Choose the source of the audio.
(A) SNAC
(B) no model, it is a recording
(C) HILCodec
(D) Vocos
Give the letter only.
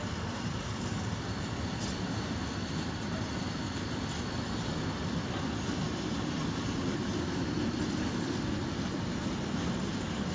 B